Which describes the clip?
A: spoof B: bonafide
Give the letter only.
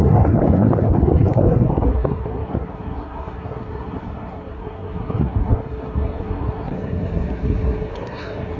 A